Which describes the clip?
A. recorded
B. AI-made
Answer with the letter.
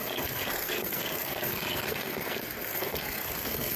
B